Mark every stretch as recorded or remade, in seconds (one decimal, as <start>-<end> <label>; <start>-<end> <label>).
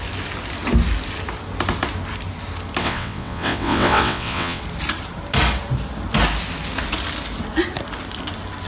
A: 0.0-2.8 recorded; 2.8-4.6 remade; 4.6-8.7 recorded